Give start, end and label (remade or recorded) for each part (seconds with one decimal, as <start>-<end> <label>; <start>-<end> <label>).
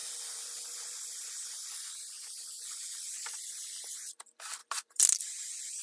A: 0.0-3.5 remade; 3.5-4.6 recorded; 4.6-5.2 remade; 5.2-5.8 recorded